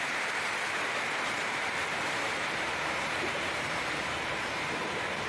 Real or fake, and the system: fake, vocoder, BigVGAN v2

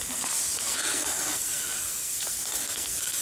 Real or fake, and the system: fake, codec, SNAC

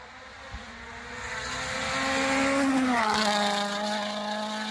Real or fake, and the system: real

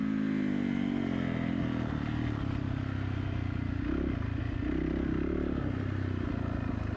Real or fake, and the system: real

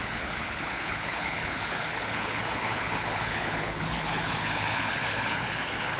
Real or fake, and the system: fake, codec, HILCodec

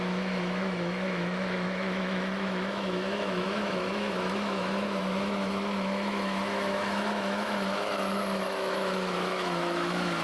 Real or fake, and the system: fake, autoencoder, DAC-VAE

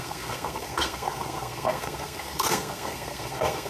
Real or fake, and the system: fake, codec, SNAC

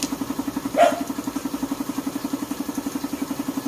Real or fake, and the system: real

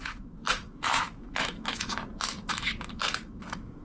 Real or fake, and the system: fake, autoencoder, DAC-VAE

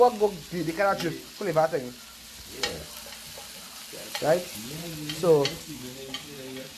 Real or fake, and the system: real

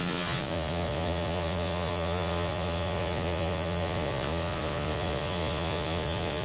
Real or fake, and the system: fake, vocoder, Vocos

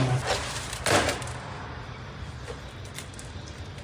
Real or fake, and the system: real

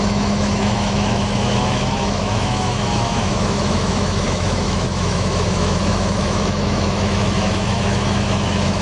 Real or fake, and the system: fake, autoencoder, DAC-VAE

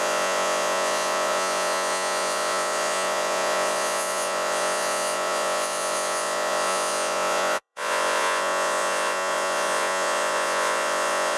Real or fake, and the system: fake, vocoder, Vocos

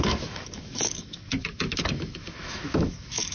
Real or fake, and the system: fake, autoencoder, DAC-VAE